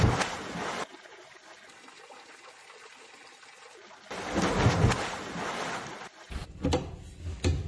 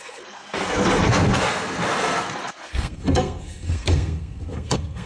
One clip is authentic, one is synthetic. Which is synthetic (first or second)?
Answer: second